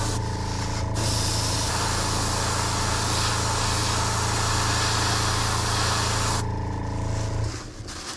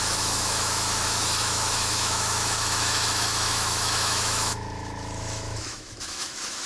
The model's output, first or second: second